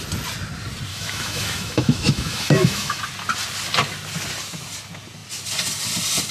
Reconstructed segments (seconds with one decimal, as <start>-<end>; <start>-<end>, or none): 0.9-3.0